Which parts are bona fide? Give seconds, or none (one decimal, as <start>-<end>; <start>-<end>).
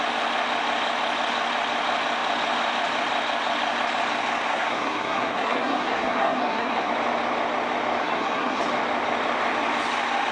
0.0-4.5; 6.9-8.0; 8.6-10.3